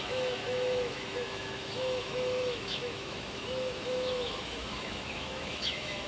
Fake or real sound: fake